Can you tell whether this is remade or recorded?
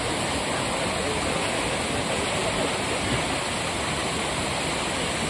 recorded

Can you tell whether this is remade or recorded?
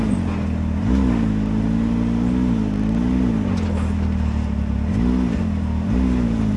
recorded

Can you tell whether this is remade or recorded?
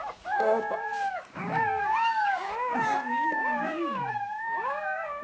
remade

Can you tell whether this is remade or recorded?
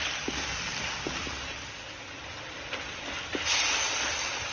recorded